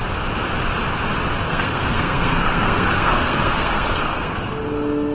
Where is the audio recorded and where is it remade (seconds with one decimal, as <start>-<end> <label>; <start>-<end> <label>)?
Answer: 0.0-1.5 recorded; 1.5-4.6 remade; 4.6-5.1 recorded